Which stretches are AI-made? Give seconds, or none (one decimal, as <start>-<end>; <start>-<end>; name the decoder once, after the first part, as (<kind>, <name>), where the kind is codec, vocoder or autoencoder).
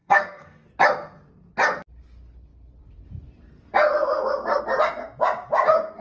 0.0-0.7 (codec, SNAC)